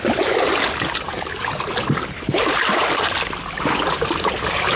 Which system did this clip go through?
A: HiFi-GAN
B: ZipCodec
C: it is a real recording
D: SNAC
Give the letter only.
C